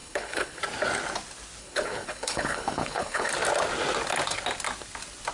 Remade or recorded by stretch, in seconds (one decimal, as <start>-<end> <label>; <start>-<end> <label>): 0.0-0.6 remade; 0.6-1.6 recorded; 1.6-3.3 remade; 3.3-5.3 recorded